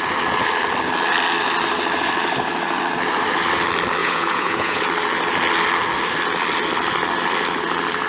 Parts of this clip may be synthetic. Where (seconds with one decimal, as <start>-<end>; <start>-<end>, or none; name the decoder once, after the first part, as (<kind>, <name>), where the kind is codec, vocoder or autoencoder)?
4.0-4.8 (vocoder, Vocos)